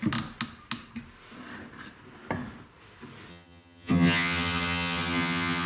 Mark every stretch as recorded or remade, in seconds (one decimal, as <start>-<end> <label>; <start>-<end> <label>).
0.0-3.3 recorded; 3.3-5.7 remade